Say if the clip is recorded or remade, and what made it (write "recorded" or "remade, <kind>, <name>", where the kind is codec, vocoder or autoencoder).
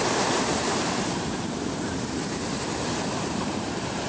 remade, vocoder, BigVGAN v2